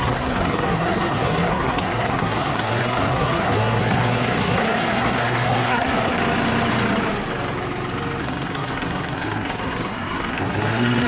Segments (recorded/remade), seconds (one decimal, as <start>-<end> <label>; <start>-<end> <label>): 0.0-6.2 remade; 6.2-8.2 recorded; 8.2-11.1 remade

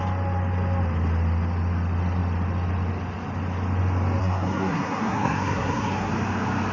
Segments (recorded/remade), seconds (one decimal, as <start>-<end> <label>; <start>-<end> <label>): 0.0-4.2 recorded; 4.2-6.1 remade; 6.1-6.7 recorded

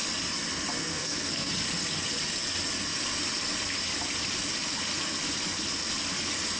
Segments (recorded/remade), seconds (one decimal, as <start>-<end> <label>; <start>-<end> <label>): 0.0-0.8 recorded; 0.8-1.5 remade; 1.5-6.6 recorded

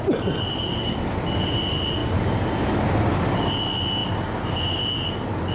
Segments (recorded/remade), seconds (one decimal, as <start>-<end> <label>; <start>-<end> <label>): 0.0-5.5 recorded